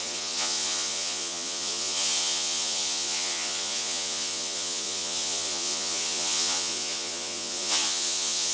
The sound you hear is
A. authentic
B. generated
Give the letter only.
B